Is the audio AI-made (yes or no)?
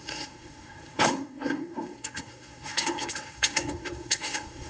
yes